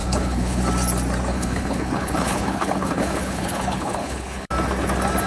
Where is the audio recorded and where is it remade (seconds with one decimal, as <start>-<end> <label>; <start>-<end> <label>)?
0.0-0.6 remade; 0.6-1.3 recorded; 1.3-4.5 remade; 4.5-5.3 recorded